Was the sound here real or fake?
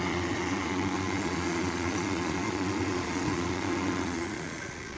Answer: fake